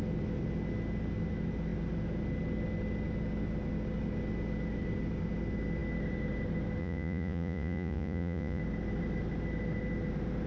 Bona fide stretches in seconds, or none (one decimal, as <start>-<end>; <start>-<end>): 0.0-6.8; 8.6-10.5